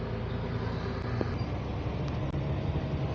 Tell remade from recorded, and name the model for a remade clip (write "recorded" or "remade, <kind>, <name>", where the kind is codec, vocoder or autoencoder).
recorded